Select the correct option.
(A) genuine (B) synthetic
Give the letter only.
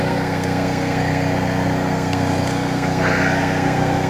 B